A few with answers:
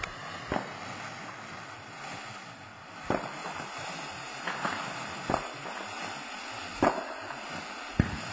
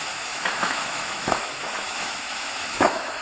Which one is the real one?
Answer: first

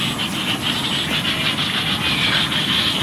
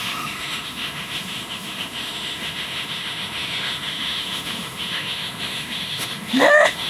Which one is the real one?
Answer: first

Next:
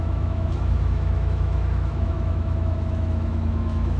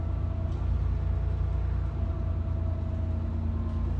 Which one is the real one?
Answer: second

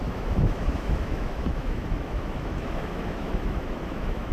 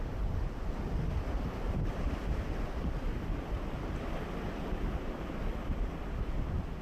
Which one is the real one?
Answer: second